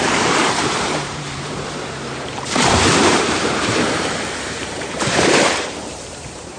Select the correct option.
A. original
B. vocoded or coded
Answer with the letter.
B